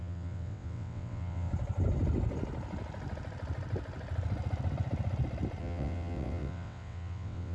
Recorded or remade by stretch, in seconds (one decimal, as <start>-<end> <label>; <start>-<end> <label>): 0.0-1.5 remade; 1.5-5.6 recorded; 5.6-7.5 remade